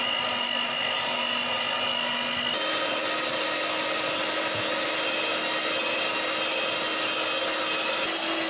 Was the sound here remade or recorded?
recorded